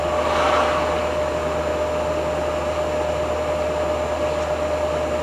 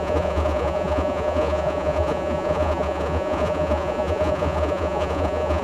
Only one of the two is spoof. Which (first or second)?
second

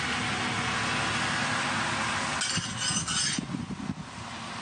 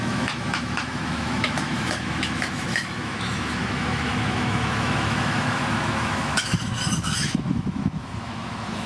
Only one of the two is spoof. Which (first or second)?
second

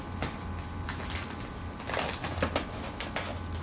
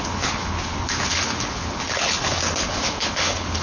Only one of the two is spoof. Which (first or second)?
second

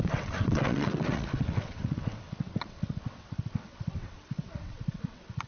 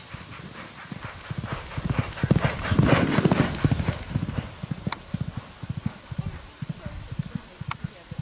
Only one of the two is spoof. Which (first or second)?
first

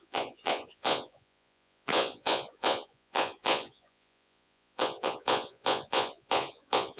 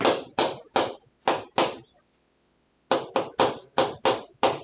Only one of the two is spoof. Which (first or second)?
first